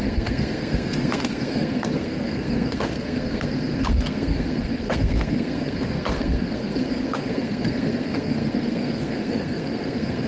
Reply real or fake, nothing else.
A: fake